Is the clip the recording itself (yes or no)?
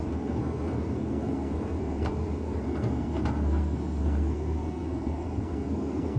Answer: no